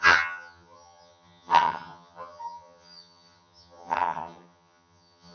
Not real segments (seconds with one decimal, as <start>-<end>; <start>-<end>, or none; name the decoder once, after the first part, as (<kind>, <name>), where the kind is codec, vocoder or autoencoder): 0.0-5.3 (vocoder, HiFi-GAN)